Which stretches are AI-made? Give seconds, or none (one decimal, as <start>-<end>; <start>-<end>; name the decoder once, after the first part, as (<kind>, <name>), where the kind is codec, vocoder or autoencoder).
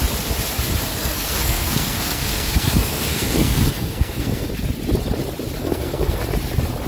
1.0-4.5 (codec, SNAC); 5.6-6.2